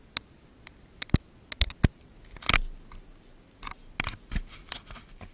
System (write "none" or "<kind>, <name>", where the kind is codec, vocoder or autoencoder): none